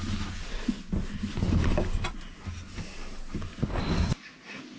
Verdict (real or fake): real